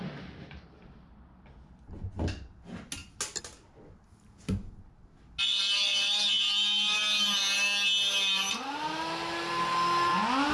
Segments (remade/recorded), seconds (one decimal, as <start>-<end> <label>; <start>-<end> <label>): 0.0-10.5 recorded